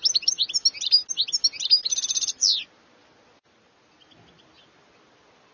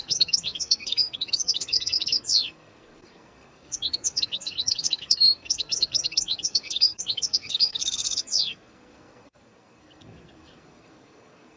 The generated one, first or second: second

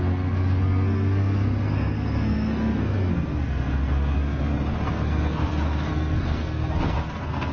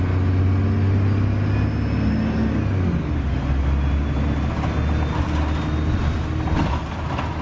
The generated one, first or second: first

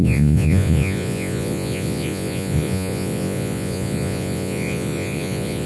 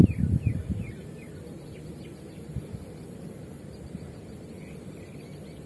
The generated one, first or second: first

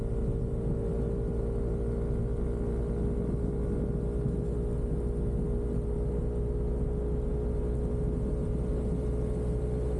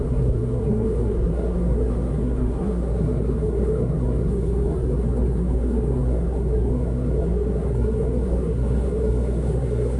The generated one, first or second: second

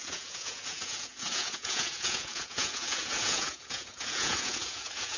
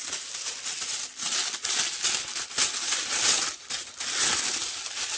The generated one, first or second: first